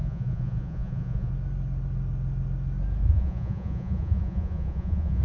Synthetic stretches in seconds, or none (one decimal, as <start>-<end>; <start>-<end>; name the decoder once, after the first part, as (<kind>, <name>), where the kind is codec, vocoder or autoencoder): 0.0-1.3 (vocoder, Vocos); 3.0-5.2